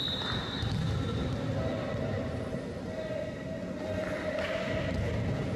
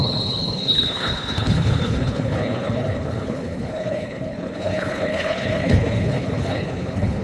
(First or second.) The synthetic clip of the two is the second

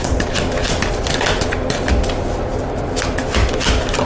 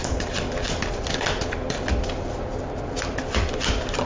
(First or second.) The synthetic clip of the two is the second